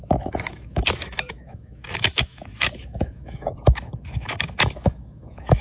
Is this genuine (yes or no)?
no